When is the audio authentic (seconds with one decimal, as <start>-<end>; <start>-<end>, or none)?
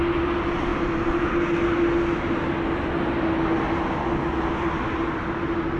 0.0-5.8